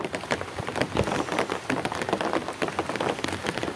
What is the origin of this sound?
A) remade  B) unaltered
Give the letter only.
B